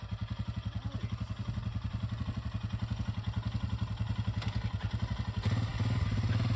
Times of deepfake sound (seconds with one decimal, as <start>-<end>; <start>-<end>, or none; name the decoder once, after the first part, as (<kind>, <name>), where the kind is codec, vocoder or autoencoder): none